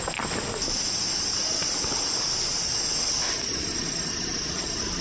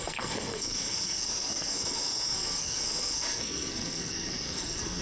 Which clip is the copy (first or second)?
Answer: second